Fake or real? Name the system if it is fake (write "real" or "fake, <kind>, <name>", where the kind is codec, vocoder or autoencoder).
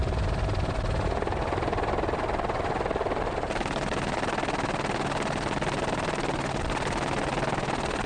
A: real